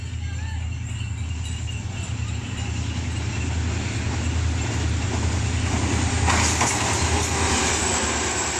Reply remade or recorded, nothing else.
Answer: recorded